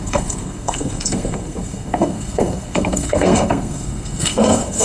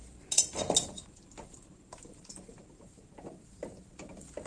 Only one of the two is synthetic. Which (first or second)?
first